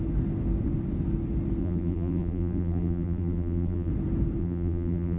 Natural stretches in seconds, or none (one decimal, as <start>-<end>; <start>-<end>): 0.0-1.6; 3.9-4.4

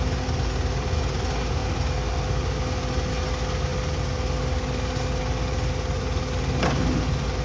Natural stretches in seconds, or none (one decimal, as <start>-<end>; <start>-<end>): 0.0-7.4

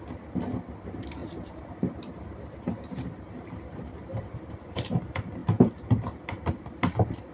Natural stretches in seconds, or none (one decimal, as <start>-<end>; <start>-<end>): 0.0-1.2; 5.0-7.3

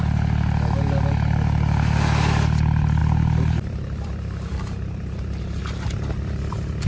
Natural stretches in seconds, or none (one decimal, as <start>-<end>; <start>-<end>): 0.0-3.0; 5.4-6.9

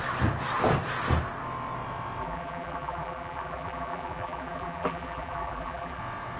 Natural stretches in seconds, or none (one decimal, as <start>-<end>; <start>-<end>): 0.0-2.2; 6.0-6.4